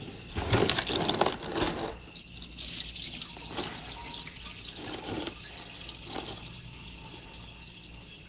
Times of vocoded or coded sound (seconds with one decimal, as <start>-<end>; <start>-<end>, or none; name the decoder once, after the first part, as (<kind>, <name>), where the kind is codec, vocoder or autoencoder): 4.0-4.9 (vocoder, BigVGAN v2)